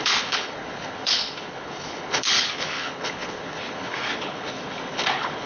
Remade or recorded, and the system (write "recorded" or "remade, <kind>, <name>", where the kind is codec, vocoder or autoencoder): remade, codec, HILCodec